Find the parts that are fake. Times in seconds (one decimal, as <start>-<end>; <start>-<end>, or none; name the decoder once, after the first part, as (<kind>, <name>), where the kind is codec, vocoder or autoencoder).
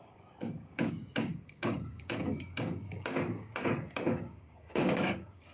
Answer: 0.0-5.5 (codec, DAC)